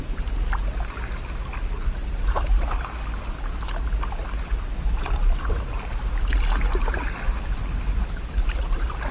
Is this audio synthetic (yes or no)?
no